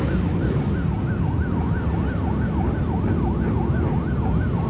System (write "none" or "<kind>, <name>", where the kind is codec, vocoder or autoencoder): none